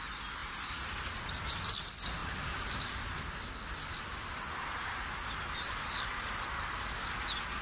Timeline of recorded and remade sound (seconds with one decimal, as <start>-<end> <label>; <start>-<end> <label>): 0.0-7.6 recorded